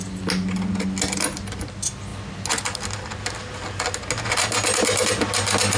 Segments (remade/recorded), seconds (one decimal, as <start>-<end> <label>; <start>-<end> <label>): 0.0-5.8 recorded